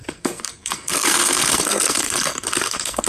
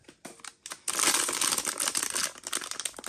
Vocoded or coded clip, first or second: first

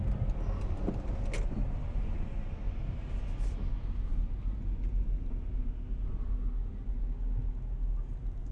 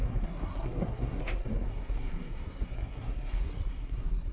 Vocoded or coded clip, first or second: second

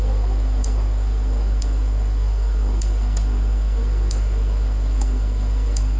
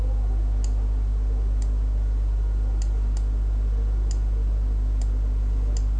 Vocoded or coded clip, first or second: first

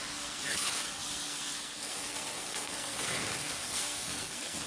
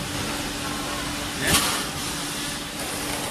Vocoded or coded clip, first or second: first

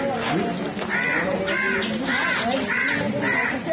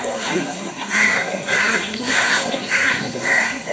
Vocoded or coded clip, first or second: second